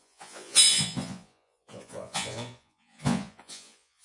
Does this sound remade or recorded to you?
remade